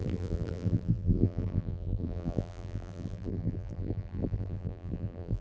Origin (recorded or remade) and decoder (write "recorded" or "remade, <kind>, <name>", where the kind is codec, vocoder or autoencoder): remade, vocoder, BigVGAN v2